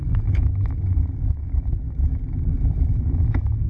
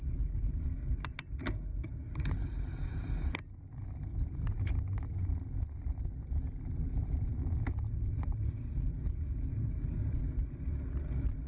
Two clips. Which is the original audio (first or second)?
second